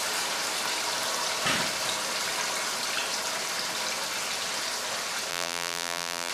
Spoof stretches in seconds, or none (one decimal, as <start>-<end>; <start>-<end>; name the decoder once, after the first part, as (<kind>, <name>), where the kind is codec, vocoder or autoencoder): 5.3-6.3 (vocoder, BigVGAN v2)